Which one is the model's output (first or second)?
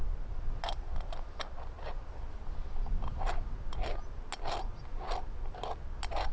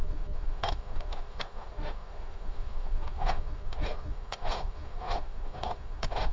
second